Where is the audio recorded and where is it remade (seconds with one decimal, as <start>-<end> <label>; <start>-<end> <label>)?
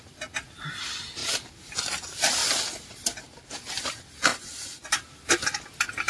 0.0-4.3 recorded; 4.3-4.9 remade; 4.9-6.1 recorded